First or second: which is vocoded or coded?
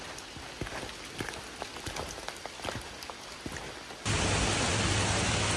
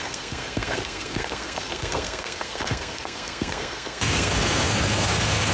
second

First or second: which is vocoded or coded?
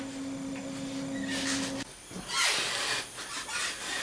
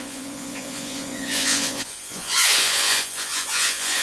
second